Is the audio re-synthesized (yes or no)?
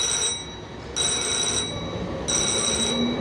no